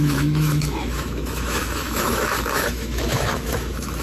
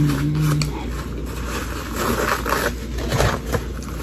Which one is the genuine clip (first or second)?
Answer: second